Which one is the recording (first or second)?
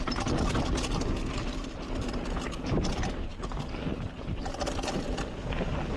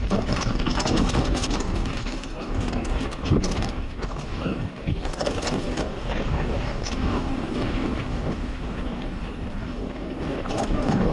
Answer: first